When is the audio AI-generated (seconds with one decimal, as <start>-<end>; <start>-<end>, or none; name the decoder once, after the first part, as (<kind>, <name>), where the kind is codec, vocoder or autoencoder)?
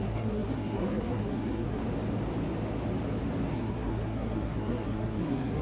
0.0-1.8 (codec, SNAC); 3.5-5.6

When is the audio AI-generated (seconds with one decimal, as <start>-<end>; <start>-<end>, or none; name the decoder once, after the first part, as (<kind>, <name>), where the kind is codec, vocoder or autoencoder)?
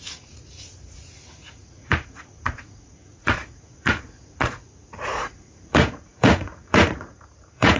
0.0-7.8 (vocoder, Vocos)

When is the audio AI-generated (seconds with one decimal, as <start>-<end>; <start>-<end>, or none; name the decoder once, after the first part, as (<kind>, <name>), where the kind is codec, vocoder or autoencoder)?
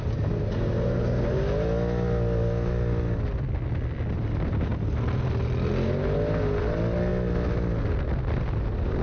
none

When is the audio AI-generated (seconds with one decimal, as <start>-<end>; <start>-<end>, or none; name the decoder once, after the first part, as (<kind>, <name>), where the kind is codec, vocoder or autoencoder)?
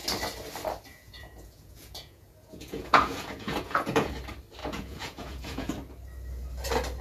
0.9-4.1 (vocoder, Vocos); 4.6-5.7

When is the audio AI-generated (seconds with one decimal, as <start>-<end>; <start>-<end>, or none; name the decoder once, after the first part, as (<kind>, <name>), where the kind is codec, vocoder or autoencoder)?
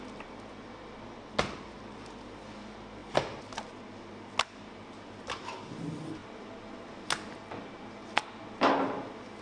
none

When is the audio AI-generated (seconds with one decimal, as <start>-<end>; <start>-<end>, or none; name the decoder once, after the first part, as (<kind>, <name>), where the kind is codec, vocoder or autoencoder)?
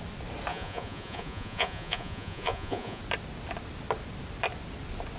0.5-3.0 (vocoder, Vocos)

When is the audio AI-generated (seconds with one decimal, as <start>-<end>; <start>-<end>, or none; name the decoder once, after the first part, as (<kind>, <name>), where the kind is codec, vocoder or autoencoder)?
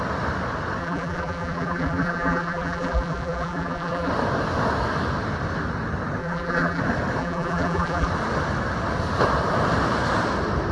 0.8-4.1 (vocoder, BigVGAN v2); 6.2-6.8; 7.2-8.1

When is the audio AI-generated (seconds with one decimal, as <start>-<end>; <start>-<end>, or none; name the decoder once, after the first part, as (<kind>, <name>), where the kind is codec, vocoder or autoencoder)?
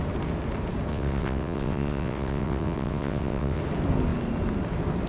0.9-3.6 (vocoder, WaveNeXt)